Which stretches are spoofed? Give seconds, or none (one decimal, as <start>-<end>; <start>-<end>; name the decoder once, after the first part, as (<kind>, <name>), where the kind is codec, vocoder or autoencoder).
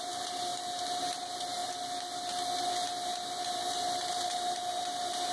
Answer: none